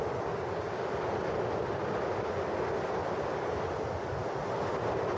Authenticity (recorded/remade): recorded